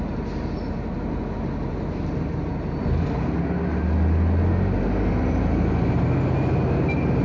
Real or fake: real